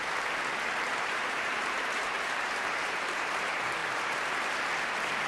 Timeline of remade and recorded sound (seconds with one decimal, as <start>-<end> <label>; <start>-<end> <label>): 0.0-0.9 recorded; 0.9-3.3 remade; 3.3-3.8 recorded; 3.8-4.6 remade; 4.6-5.3 recorded